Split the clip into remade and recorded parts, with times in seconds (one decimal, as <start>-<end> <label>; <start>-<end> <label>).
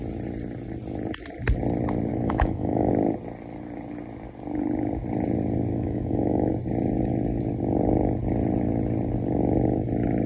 0.0-2.1 recorded; 2.1-2.9 remade; 2.9-5.7 recorded; 5.7-6.5 remade; 6.5-10.3 recorded